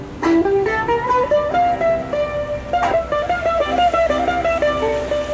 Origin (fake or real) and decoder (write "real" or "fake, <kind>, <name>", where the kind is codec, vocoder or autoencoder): real